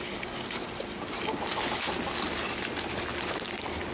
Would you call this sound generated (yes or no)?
no